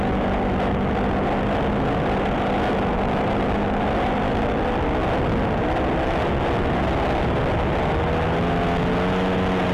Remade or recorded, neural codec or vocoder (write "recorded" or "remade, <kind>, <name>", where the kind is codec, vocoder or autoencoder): recorded